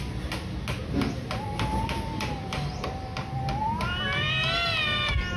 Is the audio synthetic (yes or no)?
no